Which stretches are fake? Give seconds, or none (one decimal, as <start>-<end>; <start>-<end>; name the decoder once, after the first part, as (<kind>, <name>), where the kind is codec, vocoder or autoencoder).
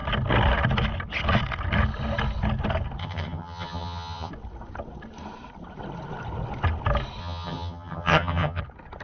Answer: 3.0-4.3 (vocoder, HiFi-GAN); 7.2-8.6